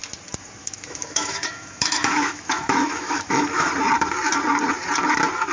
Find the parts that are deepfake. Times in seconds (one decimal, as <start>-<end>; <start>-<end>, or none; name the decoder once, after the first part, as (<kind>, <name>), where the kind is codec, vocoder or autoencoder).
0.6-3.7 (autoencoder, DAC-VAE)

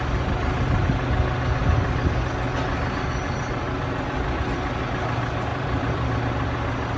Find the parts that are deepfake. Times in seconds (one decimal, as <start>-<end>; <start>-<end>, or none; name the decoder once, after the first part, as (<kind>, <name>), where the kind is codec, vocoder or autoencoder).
1.6-2.1 (vocoder, BigVGAN v2); 5.5-7.0

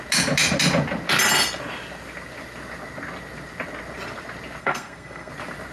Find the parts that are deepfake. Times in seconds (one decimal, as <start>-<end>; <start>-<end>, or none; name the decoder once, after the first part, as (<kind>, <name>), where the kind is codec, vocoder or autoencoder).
4.6-5.3 (codec, SNAC)

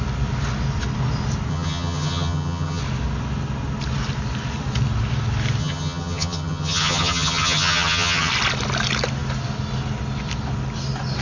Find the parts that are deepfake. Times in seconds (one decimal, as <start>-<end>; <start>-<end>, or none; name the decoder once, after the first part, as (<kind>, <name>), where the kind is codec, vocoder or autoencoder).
1.5-2.8 (vocoder, HiFi-GAN); 5.6-8.3

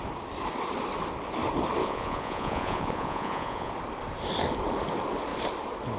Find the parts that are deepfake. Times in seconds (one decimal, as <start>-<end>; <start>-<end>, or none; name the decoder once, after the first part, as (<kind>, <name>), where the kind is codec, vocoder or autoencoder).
1.8-3.7 (vocoder, Vocos)

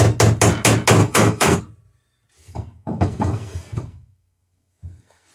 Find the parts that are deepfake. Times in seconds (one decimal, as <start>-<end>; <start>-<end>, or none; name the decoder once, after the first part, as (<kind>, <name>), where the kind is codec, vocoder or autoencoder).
1.0-1.6 (codec, SNAC); 2.4-5.3